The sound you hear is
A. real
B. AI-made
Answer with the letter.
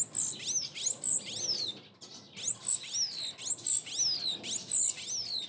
A